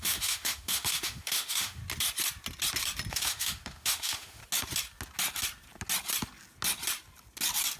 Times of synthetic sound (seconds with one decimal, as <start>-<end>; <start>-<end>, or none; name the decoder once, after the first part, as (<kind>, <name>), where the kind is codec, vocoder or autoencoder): 0.0-1.8 (autoencoder, DAC-VAE); 3.1-4.4